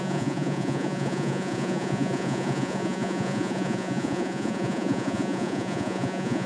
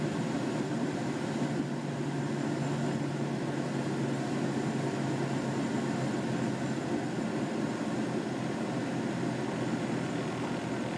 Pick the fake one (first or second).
first